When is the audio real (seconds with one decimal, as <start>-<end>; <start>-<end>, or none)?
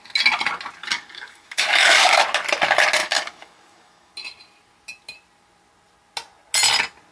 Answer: 0.0-0.8; 2.2-3.0; 4.1-7.1